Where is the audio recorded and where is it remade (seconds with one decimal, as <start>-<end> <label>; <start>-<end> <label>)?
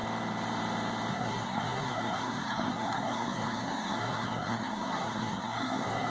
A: 0.0-1.1 recorded; 1.1-6.1 remade